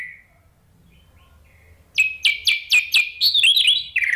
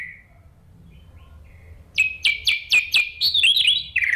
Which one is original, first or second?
first